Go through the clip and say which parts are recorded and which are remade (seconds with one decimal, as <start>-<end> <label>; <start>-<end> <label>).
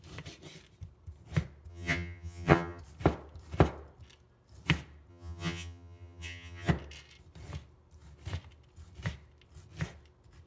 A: 0.0-1.7 recorded; 1.7-2.8 remade; 2.8-5.1 recorded; 5.1-6.7 remade; 6.7-10.5 recorded